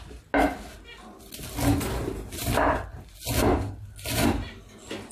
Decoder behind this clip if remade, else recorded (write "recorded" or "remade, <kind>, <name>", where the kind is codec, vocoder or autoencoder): recorded